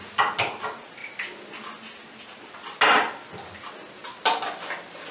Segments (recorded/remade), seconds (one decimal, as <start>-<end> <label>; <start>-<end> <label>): 0.0-5.1 recorded